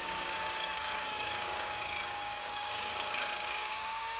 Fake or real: fake